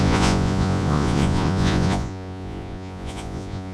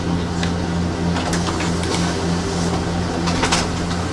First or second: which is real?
second